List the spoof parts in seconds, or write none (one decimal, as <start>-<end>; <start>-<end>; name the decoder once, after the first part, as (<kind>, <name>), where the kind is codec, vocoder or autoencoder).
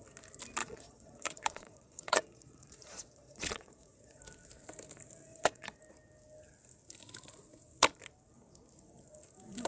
0.6-4.2 (vocoder, Vocos); 5.3-5.8